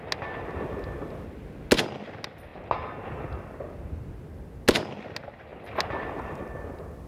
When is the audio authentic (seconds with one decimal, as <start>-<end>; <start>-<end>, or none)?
0.0-7.1